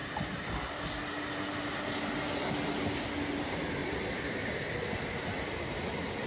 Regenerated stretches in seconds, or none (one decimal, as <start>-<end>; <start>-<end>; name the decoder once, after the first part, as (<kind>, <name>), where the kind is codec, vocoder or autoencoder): 0.0-0.5 (vocoder, BigVGAN v2); 3.8-6.3